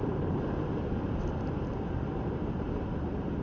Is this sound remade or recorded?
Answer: remade